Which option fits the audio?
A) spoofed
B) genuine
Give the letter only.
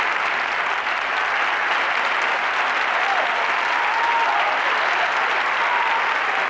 B